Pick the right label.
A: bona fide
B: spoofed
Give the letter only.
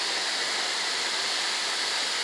A